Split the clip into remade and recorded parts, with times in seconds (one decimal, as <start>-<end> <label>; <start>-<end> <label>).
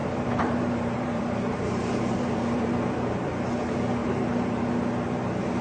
0.0-2.7 remade; 2.7-4.0 recorded; 4.0-4.6 remade; 4.6-5.6 recorded